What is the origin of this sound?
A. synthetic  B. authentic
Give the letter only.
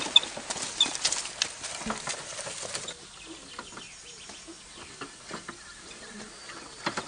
B